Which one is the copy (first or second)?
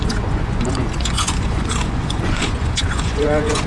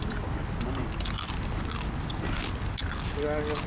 first